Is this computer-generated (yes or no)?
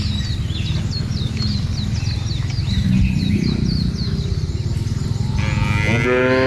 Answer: no